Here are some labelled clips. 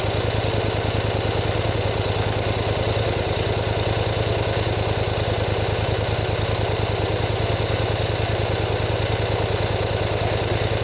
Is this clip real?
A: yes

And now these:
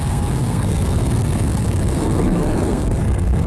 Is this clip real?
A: no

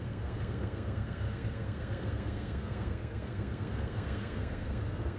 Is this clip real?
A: no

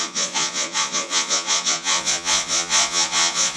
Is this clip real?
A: no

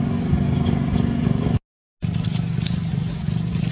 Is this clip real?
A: yes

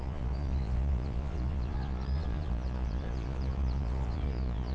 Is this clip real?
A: no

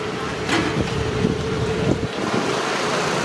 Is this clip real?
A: yes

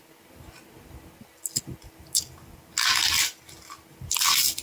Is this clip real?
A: yes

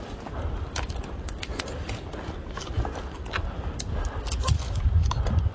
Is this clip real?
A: yes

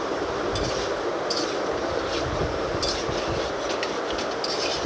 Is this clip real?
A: yes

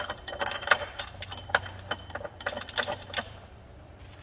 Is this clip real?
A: no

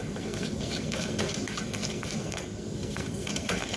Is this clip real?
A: no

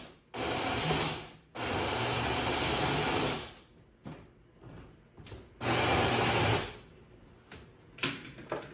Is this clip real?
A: yes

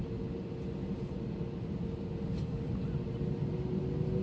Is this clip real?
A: yes